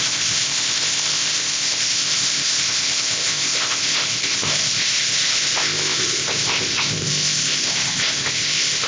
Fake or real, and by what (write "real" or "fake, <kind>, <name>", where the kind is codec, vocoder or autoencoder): fake, codec, ZipCodec